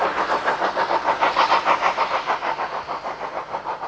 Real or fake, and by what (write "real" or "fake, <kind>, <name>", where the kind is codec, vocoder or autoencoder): real